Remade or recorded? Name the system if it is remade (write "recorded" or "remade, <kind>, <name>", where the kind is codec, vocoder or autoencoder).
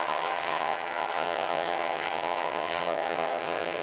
remade, vocoder, HiFi-GAN